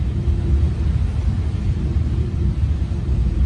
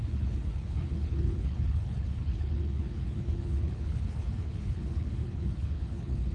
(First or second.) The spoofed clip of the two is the second